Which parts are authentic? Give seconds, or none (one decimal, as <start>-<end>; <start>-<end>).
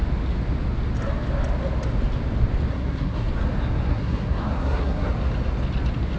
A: 0.0-2.7; 3.3-3.9; 5.1-6.2